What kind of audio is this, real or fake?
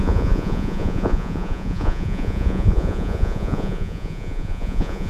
fake